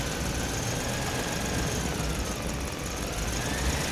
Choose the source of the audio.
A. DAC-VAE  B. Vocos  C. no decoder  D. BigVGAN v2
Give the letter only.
C